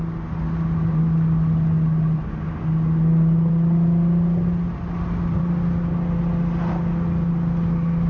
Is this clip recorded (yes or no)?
yes